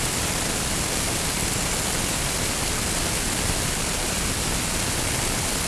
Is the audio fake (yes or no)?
no